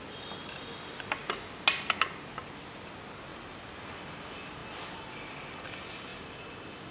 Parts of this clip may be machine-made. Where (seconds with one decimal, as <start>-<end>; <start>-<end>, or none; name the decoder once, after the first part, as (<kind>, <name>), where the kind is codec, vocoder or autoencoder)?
3.3-3.8 (vocoder, BigVGAN v2); 6.1-6.9